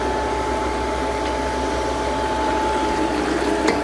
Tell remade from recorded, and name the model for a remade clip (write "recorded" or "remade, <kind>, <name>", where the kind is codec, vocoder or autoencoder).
recorded